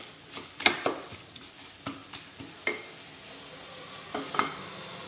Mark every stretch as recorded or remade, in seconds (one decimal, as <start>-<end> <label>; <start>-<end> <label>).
0.0-5.1 recorded